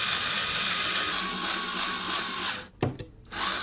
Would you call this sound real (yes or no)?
yes